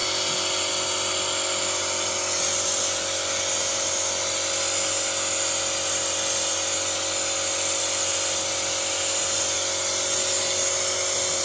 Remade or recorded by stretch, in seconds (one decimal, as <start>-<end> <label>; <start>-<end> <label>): 0.0-11.4 recorded